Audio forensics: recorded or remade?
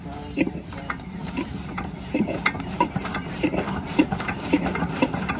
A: remade